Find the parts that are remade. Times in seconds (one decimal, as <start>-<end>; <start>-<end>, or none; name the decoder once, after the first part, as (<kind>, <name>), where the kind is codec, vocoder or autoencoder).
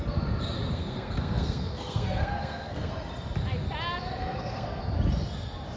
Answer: 0.7-2.9 (codec, SNAC); 4.2-4.8